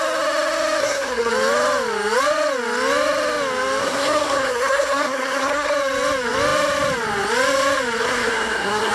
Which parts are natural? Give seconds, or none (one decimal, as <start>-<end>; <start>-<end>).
0.0-0.8; 1.3-3.8; 5.7-8.0